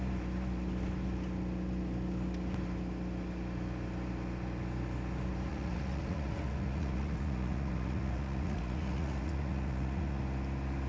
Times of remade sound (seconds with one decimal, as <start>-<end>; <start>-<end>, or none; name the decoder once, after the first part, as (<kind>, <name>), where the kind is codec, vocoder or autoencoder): 5.5-10.2 (vocoder, Vocos)